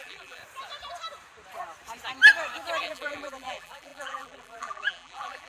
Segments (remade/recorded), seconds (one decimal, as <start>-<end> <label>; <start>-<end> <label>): 0.0-0.4 remade; 0.4-2.8 recorded; 2.8-5.5 remade

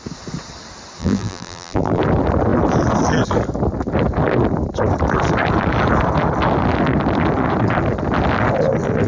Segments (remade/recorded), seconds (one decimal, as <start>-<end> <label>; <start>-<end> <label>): 0.0-1.0 recorded; 1.0-2.0 remade; 2.0-9.1 recorded

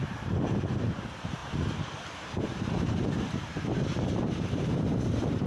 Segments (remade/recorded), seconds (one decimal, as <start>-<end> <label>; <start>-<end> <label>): 0.0-5.5 remade